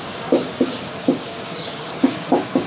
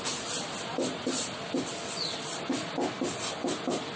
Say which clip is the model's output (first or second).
first